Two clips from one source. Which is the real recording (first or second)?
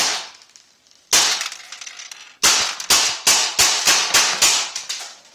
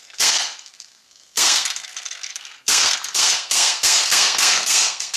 first